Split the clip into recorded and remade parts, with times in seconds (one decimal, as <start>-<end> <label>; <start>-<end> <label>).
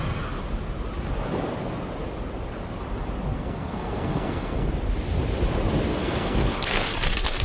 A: 0.0-3.3 recorded; 3.3-4.7 remade; 4.7-5.9 recorded; 5.9-7.4 remade